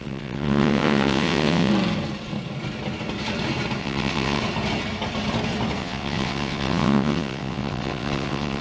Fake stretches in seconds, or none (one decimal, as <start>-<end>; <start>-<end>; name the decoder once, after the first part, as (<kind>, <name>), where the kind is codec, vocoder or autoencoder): 0.0-1.7 (vocoder, WaveNeXt); 3.8-4.4; 5.8-8.6